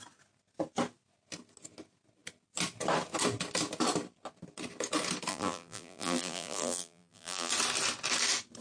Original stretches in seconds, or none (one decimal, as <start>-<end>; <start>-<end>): 0.0-5.3; 7.5-8.6